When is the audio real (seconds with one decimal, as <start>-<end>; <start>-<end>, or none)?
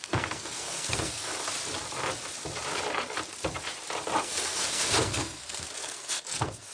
1.3-4.2